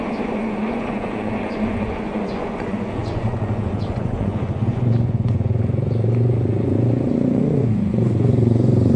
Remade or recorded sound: remade